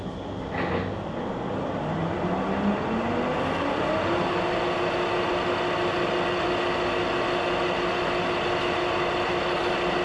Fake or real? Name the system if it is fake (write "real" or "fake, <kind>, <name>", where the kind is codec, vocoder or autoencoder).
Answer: real